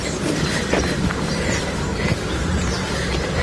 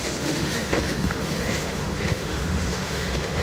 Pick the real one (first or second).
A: first